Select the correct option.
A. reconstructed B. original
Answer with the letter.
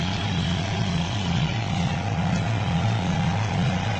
A